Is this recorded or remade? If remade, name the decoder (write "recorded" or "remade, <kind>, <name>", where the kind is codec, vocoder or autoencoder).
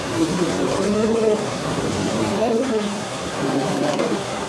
remade, codec, SNAC